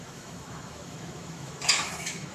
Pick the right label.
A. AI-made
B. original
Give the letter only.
A